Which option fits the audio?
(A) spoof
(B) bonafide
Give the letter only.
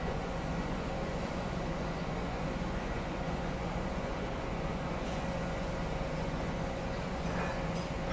A